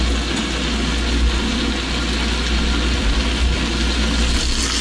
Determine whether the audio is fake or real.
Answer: real